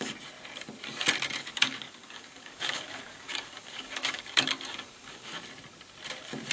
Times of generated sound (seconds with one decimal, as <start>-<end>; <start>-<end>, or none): 1.4-5.3